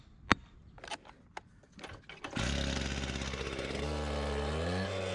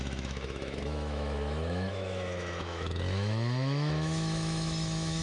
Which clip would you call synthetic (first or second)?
second